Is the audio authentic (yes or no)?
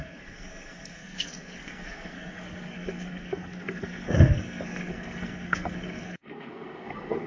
no